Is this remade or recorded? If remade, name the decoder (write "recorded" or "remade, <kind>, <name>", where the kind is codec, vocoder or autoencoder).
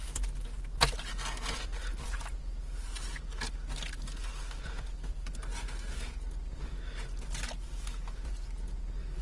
recorded